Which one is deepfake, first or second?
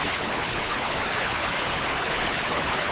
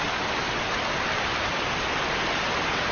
first